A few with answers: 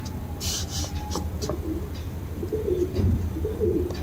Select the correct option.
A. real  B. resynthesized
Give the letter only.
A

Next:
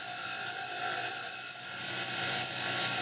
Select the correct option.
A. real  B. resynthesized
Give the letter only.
A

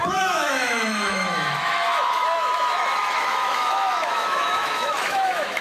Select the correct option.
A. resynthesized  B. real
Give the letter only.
A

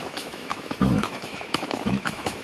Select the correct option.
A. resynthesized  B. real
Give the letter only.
A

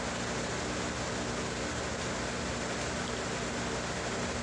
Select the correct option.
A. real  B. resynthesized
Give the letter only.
A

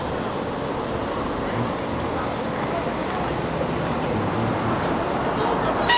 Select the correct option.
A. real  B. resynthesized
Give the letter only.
A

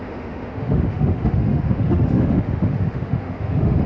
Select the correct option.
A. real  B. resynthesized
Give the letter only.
B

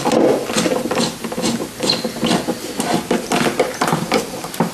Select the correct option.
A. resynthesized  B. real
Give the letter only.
B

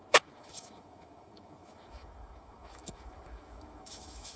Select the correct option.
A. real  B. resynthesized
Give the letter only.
B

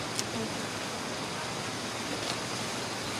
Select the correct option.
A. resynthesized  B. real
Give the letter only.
B